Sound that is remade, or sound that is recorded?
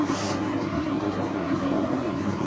remade